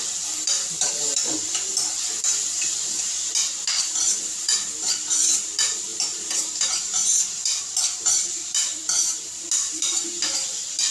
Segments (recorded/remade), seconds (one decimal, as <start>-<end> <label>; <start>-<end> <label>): 0.0-1.4 remade; 1.4-4.0 recorded; 4.0-8.8 remade; 8.8-9.7 recorded; 9.7-10.9 remade